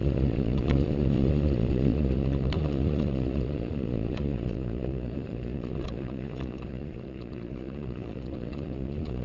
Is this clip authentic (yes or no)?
no